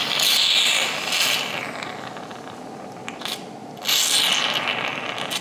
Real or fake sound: real